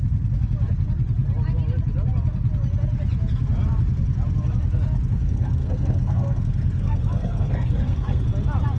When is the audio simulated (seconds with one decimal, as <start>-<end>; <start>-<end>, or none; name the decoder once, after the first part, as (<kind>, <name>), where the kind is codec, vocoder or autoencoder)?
5.1-8.2 (codec, SNAC)